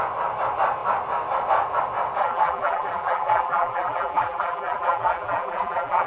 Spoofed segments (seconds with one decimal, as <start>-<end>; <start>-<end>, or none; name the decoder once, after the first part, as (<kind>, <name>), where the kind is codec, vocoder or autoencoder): 2.2-6.1 (vocoder, BigVGAN v2)